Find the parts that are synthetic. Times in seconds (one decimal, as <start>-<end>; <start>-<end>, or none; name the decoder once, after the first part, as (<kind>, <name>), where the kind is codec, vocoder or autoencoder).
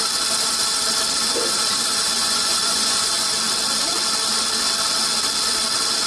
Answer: 2.2-3.1 (vocoder, Vocos)